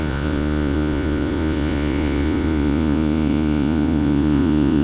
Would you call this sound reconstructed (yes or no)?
yes